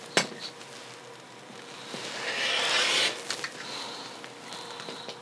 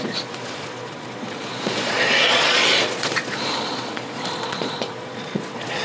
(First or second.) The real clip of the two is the first